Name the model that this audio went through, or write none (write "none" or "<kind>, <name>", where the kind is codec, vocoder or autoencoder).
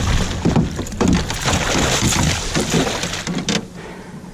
none